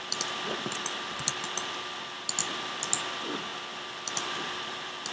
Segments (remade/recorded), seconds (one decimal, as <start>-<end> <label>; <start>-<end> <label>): 0.0-5.1 recorded